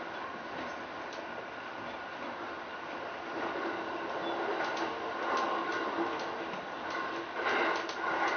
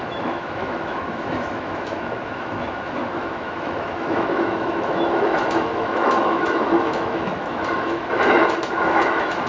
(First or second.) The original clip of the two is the first